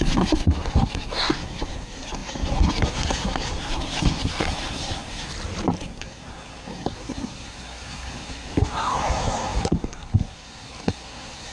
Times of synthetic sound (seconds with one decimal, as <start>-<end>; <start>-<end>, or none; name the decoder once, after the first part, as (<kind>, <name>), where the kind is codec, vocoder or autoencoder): 0.0-5.3 (codec, SNAC); 5.8-11.5